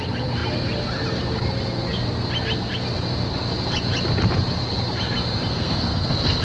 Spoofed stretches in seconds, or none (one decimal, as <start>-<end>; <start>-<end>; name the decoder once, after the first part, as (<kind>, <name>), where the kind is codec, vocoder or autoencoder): 5.5-6.4 (codec, SNAC)